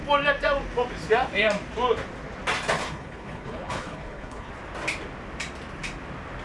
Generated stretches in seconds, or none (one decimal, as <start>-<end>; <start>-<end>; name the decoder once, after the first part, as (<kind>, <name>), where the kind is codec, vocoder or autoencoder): 2.8-4.5 (codec, HILCodec)